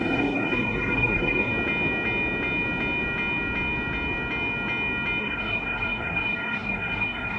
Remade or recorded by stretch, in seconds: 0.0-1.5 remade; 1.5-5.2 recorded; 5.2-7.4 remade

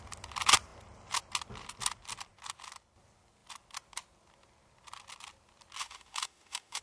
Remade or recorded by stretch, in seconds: 0.0-5.8 recorded; 5.8-6.8 remade